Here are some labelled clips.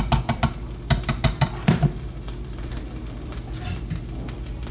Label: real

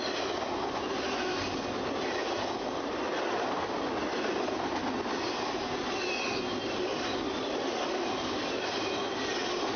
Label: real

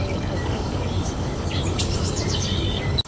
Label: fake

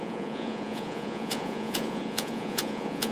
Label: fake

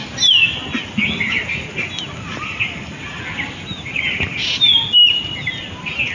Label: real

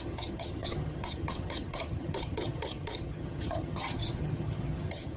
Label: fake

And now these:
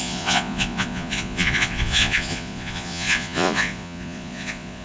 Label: fake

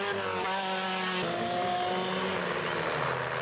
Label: real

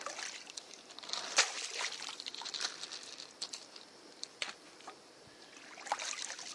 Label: real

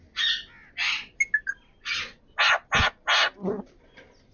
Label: real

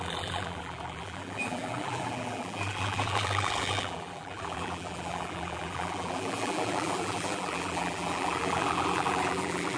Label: fake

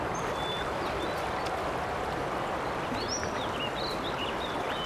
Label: real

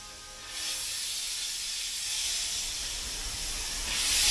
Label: real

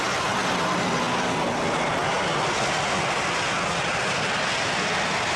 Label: real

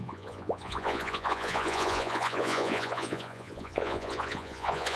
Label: fake